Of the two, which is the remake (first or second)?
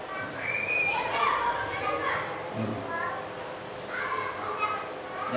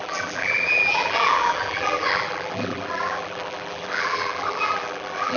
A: second